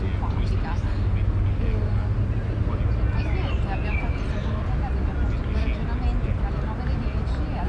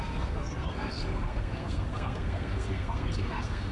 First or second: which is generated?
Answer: second